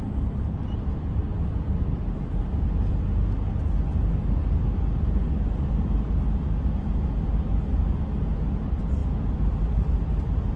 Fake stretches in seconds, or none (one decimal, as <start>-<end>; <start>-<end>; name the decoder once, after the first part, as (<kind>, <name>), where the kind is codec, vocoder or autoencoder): none